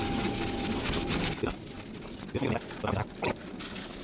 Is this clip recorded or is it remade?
recorded